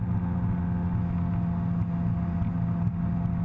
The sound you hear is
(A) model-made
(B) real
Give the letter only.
B